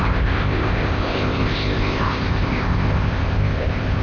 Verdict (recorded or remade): remade